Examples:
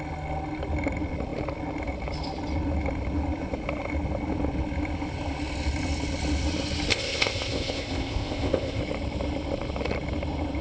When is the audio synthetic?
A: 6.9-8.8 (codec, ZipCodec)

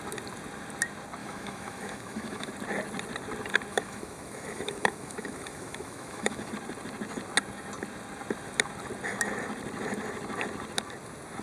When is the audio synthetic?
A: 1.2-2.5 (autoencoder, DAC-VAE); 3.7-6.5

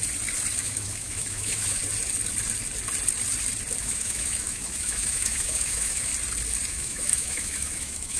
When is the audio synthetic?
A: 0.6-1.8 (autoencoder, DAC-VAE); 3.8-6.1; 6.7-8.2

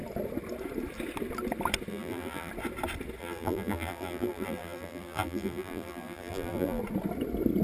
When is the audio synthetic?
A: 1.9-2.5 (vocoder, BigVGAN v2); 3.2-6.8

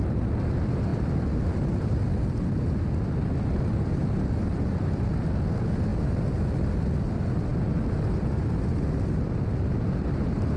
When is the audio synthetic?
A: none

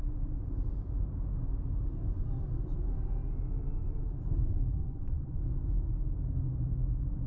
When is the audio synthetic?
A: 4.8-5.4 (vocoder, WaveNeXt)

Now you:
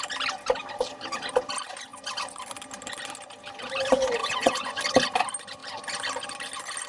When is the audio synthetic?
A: 4.2-4.8 (vocoder, Vocos)